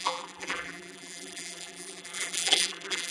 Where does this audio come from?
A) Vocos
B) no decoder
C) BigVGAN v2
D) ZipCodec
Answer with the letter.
C